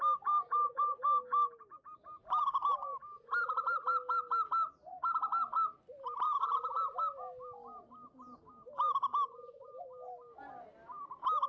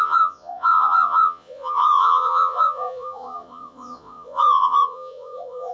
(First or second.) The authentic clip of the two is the first